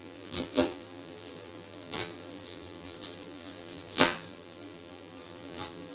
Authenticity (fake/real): fake